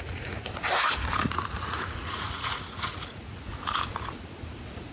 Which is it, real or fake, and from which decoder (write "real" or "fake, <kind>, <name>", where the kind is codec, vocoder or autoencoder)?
fake, vocoder, Vocos